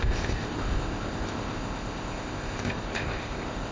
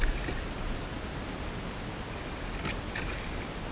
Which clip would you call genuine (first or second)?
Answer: second